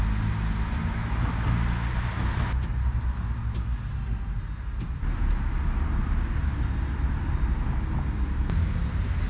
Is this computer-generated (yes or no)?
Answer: no